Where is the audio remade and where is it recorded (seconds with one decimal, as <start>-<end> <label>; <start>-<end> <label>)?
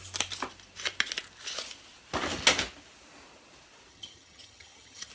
0.0-3.9 recorded; 3.9-5.1 remade